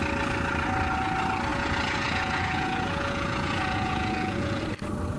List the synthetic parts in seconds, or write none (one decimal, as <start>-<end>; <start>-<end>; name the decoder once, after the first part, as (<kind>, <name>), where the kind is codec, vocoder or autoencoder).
1.5-4.6 (vocoder, Vocos)